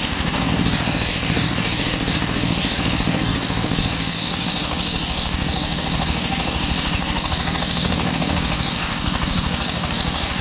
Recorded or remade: remade